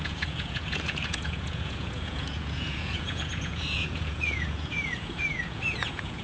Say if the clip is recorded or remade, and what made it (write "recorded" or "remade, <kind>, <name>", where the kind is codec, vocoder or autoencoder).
remade, vocoder, Vocos